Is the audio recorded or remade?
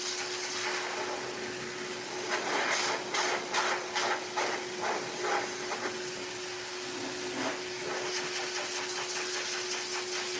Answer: recorded